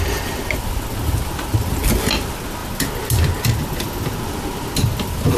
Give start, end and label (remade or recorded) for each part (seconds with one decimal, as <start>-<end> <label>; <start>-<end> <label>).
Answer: 0.0-5.4 recorded

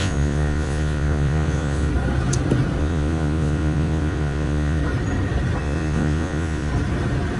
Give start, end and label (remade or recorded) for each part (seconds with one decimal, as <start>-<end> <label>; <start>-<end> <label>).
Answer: 0.0-1.9 remade; 1.9-2.8 recorded; 2.8-4.8 remade; 4.8-5.6 recorded; 5.6-6.7 remade; 6.7-7.4 recorded

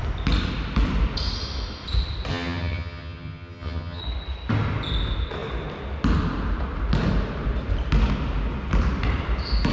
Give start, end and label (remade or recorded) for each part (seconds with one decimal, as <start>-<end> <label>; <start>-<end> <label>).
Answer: 0.0-2.3 recorded; 2.3-4.0 remade; 4.0-9.7 recorded